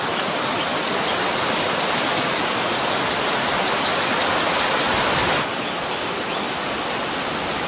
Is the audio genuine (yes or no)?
yes